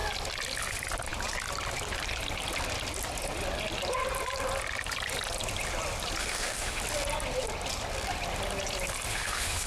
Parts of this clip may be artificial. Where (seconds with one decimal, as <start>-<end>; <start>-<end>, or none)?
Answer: 6.2-6.8; 9.1-9.7